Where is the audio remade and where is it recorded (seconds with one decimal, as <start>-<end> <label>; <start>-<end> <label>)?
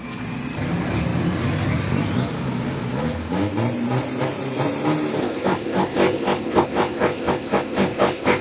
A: 0.0-5.2 recorded; 5.2-8.4 remade